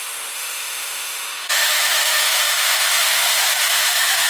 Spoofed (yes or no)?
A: yes